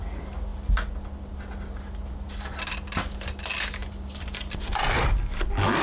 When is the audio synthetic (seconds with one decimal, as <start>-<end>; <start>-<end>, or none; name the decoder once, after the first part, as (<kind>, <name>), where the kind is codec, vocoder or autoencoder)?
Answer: 3.8-5.2 (vocoder, BigVGAN v2)